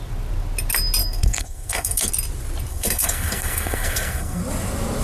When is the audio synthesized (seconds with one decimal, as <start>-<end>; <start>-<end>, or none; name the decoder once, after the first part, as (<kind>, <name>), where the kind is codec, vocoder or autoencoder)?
1.0-2.1 (codec, SNAC); 2.7-4.4